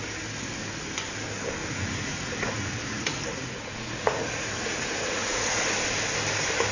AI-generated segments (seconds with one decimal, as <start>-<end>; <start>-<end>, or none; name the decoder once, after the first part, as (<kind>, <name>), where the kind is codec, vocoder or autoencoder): 1.6-5.6 (vocoder, Vocos)